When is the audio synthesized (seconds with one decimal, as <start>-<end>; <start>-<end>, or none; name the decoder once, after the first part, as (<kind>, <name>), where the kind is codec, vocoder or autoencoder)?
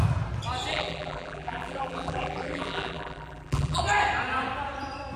0.7-3.8 (vocoder, BigVGAN v2)